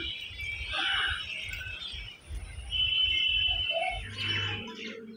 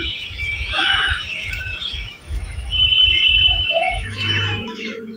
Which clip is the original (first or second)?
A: first